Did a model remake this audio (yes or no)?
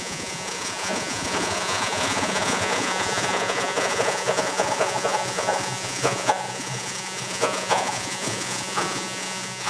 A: yes